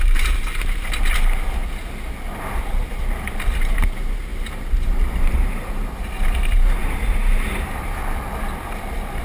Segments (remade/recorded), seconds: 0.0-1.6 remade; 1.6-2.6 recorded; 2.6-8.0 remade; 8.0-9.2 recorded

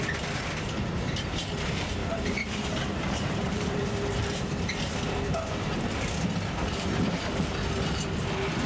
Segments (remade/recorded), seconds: 0.0-2.0 recorded; 2.0-4.6 remade; 4.6-8.7 recorded

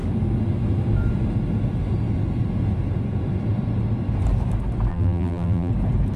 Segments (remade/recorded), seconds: 0.0-4.9 recorded; 4.9-5.7 remade; 5.7-6.2 recorded

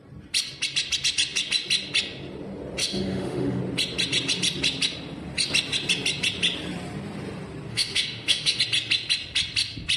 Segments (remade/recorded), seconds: 0.0-2.8 recorded; 2.8-3.6 remade; 3.6-7.7 recorded; 7.7-8.6 remade; 8.6-10.0 recorded

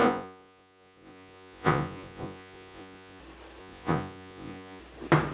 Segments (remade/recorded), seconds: 0.0-3.2 remade; 3.2-3.6 recorded; 3.6-4.8 remade; 4.8-5.3 recorded